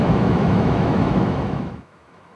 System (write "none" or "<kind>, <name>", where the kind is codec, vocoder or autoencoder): autoencoder, DAC-VAE